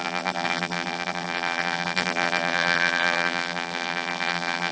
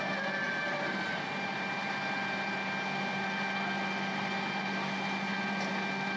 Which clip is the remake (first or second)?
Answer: first